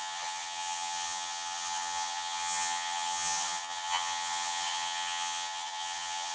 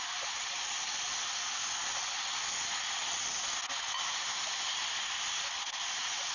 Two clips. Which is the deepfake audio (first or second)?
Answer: first